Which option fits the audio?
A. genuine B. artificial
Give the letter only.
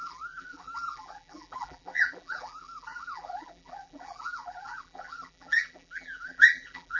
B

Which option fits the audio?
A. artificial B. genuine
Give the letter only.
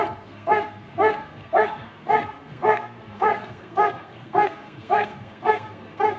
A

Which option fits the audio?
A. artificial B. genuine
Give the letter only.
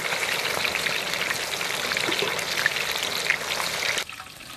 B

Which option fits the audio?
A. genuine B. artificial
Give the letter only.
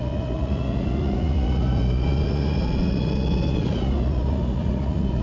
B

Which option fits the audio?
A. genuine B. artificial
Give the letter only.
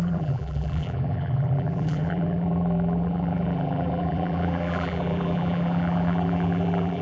B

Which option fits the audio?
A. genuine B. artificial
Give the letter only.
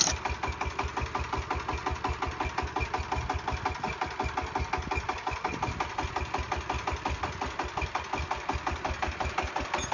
A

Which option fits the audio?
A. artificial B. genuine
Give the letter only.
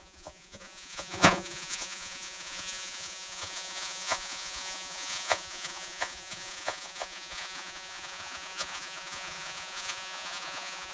A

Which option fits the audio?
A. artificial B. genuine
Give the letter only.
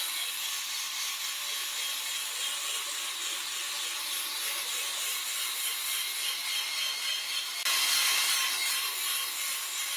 B